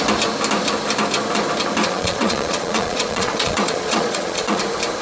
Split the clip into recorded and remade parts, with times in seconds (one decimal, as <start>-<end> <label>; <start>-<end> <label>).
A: 0.0-1.8 recorded; 1.8-4.6 remade; 4.6-5.0 recorded